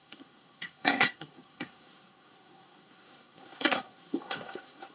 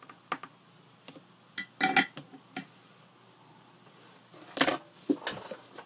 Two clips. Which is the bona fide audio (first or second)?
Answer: second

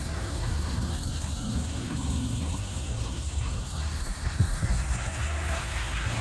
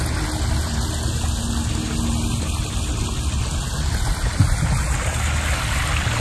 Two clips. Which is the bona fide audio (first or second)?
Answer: second